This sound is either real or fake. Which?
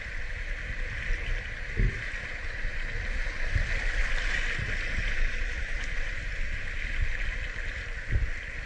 real